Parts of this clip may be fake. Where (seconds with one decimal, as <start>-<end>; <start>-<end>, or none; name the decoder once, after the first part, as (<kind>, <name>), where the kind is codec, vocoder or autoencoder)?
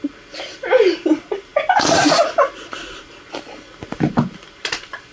none